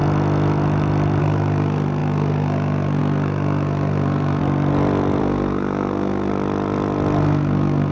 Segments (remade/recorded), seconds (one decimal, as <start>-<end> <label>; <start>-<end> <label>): 0.0-1.2 recorded; 1.2-4.4 remade; 4.4-5.2 recorded; 5.2-6.3 remade; 6.3-7.2 recorded; 7.2-7.9 remade

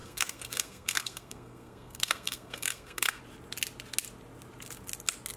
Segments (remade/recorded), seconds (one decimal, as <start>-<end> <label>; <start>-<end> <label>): 0.0-3.2 remade; 3.2-5.4 recorded

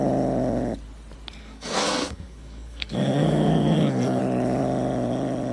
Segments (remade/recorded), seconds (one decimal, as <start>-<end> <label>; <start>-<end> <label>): 0.0-1.4 recorded; 1.4-4.2 remade; 4.2-5.5 recorded

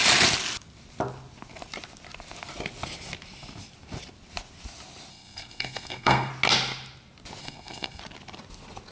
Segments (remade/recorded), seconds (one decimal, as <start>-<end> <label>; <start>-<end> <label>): 0.0-5.1 recorded; 5.1-6.3 remade; 6.3-7.4 recorded; 7.4-8.0 remade; 8.0-8.9 recorded

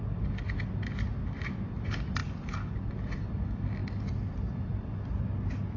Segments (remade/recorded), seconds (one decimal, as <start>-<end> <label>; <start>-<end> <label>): 0.0-5.8 recorded

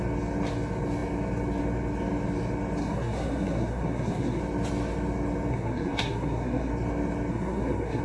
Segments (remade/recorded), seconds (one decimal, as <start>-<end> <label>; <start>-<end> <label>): 0.0-2.8 recorded; 2.8-4.4 remade; 4.4-5.5 recorded; 5.5-6.7 remade; 6.7-7.3 recorded; 7.3-8.0 remade

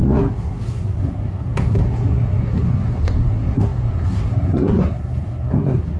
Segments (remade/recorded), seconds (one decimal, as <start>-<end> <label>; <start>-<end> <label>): 0.0-6.0 remade